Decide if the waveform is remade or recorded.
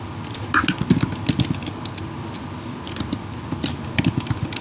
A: recorded